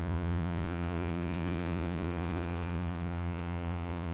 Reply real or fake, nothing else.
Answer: fake